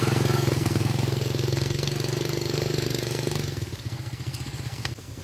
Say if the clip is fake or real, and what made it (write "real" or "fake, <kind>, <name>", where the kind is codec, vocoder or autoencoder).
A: fake, codec, SNAC